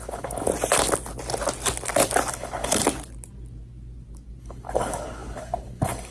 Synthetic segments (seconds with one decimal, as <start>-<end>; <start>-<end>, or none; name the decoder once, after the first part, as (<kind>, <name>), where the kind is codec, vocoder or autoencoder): 0.0-0.5 (codec, HILCodec); 2.3-2.8; 4.4-6.1